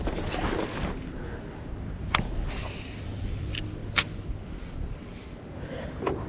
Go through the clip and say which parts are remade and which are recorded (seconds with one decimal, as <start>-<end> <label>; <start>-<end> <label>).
0.0-6.3 recorded